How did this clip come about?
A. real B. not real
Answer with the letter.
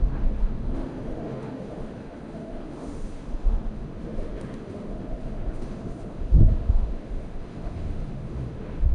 B